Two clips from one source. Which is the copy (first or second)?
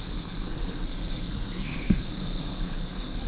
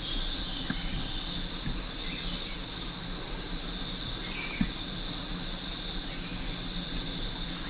first